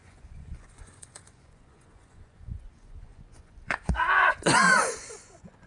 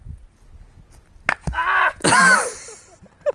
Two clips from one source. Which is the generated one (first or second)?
first